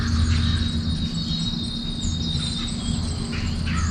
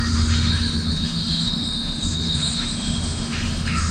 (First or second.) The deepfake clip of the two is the second